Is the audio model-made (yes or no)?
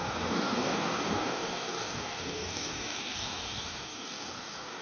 yes